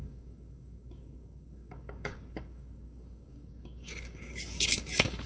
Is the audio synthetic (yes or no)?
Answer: yes